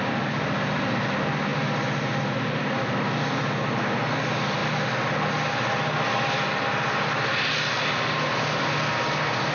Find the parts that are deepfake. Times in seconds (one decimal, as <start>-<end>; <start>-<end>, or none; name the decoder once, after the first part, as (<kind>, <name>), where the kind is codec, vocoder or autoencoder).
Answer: none